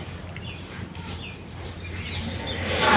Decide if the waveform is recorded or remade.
recorded